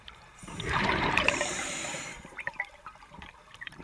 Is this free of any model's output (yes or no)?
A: no